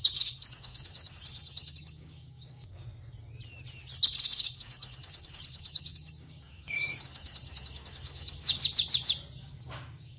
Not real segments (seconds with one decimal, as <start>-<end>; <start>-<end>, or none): 0.0-2.9; 4.2-8.6; 9.4-10.2